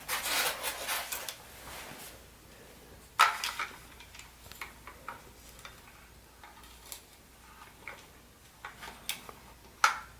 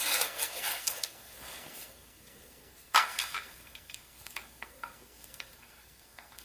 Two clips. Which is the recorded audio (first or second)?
first